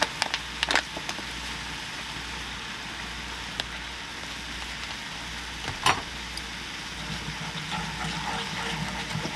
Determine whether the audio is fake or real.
real